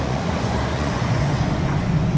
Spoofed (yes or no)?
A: yes